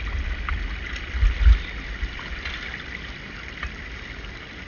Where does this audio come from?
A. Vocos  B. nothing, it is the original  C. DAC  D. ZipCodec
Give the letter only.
B